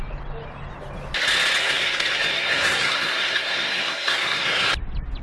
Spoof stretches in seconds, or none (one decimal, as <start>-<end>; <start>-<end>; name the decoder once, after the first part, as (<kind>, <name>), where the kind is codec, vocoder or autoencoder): 1.6-4.7 (codec, SNAC)